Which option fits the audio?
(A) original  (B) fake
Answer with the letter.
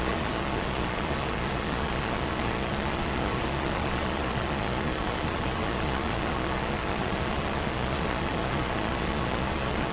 B